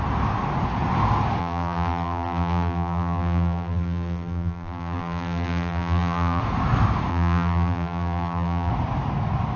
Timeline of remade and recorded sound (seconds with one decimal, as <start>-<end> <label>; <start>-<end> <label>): 0.0-1.4 recorded; 1.4-6.4 remade; 6.4-7.1 recorded; 7.1-8.7 remade; 8.7-9.6 recorded